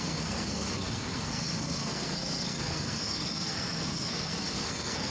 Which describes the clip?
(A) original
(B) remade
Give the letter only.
B